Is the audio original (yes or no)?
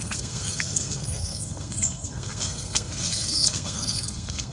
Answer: no